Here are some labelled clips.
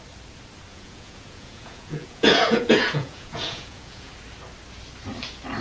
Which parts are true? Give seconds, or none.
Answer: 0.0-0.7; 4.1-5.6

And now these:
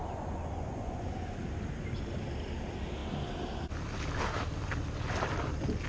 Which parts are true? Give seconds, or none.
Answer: 1.4-5.9

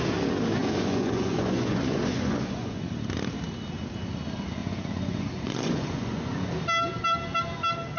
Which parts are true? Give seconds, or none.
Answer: 0.0-0.6; 2.9-4.6; 6.5-8.0

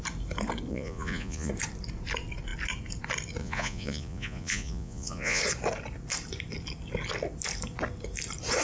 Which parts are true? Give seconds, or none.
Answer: 0.0-0.7; 1.5-3.4; 5.4-8.6

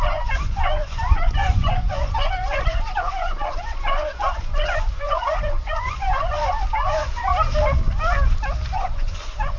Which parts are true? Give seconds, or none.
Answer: 7.3-8.7

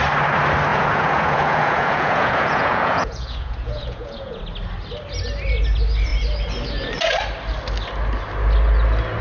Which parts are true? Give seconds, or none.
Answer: 0.0-0.7; 4.4-9.2

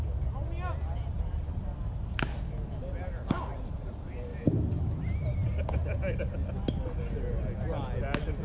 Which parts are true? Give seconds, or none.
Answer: 0.0-8.4